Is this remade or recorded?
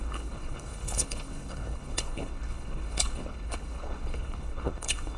remade